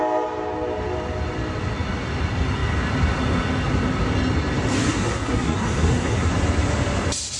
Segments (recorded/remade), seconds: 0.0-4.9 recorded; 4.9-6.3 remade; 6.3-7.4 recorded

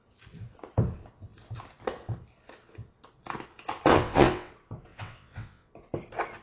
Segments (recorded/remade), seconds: 0.0-3.9 recorded; 3.9-4.5 remade; 4.5-4.9 recorded; 4.9-5.7 remade; 5.7-6.4 recorded